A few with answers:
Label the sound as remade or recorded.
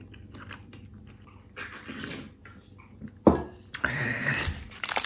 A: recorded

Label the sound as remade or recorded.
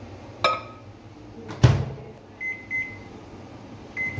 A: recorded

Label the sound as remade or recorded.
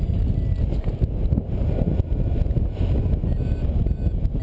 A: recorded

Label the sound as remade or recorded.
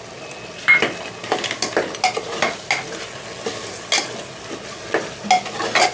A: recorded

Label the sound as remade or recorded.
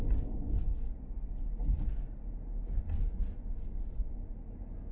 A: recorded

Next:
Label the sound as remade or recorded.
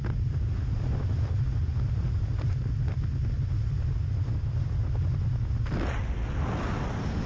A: recorded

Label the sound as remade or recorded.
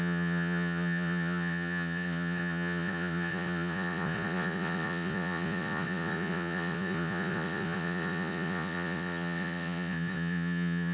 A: remade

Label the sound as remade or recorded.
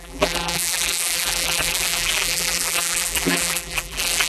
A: remade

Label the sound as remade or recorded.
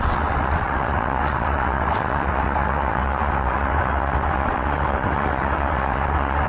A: remade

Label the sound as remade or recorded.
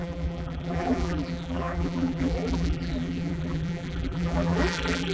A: remade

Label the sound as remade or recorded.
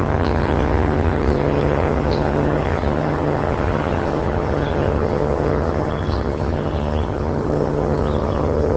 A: remade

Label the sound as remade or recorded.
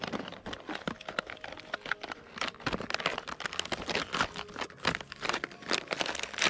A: recorded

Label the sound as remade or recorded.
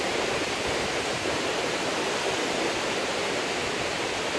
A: recorded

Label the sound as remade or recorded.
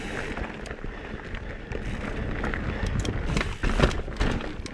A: recorded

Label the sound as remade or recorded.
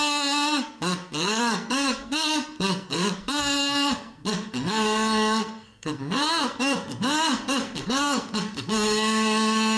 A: remade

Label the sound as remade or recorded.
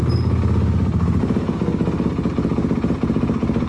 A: recorded